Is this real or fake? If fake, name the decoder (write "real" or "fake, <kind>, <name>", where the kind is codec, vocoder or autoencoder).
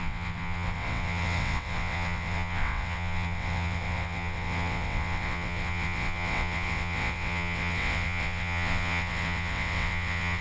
fake, vocoder, WaveNeXt